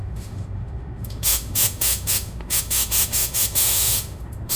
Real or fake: fake